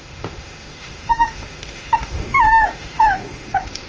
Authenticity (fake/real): fake